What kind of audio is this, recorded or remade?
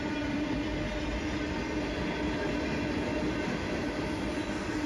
recorded